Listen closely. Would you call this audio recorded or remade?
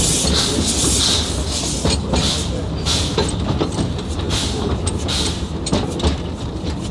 recorded